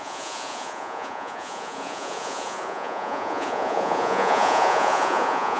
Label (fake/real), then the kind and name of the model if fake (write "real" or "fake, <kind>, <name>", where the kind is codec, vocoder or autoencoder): fake, vocoder, Vocos